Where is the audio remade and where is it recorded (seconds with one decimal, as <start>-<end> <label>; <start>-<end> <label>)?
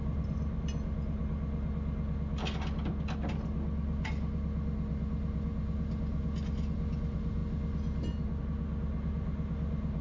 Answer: 0.0-10.0 recorded